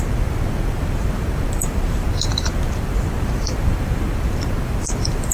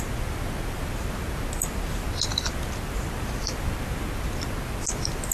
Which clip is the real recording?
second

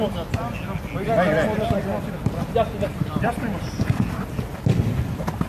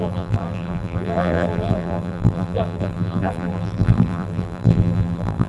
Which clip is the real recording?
first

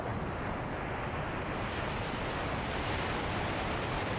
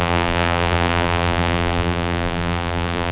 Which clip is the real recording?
first